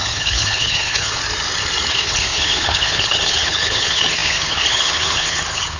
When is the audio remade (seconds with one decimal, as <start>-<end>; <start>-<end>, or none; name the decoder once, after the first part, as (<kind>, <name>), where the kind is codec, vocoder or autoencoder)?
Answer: 0.0-1.2 (codec, HILCodec); 1.9-5.8